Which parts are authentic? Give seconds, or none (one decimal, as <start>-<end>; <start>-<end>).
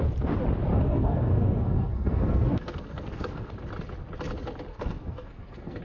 0.0-0.7; 3.5-4.7